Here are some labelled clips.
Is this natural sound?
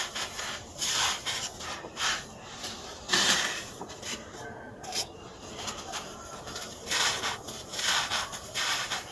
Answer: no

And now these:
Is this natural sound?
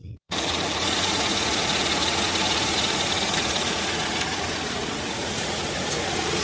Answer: no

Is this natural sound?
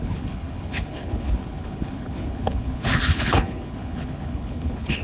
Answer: no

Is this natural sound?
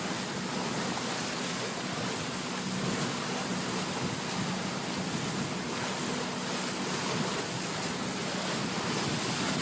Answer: yes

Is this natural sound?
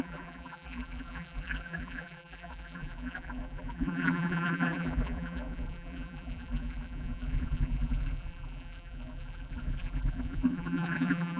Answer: no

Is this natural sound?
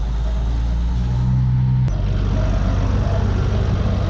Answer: yes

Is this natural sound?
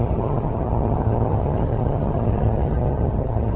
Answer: no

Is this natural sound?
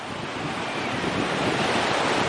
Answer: yes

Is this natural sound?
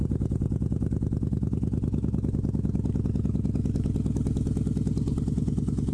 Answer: yes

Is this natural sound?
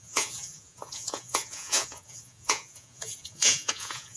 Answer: no